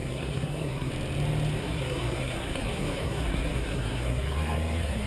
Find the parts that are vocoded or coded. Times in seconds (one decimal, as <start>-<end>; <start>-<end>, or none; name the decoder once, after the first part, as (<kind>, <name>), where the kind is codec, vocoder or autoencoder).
0.0-0.9 (codec, SNAC); 1.6-5.1